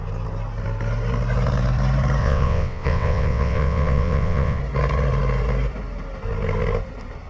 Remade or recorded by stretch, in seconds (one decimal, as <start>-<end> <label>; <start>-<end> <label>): 0.0-2.2 recorded; 2.2-4.6 remade; 4.6-7.3 recorded